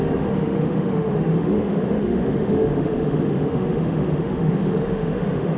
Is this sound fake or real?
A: fake